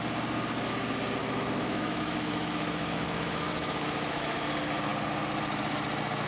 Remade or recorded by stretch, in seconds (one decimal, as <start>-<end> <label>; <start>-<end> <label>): 0.0-1.2 recorded; 1.2-4.5 remade; 4.5-6.3 recorded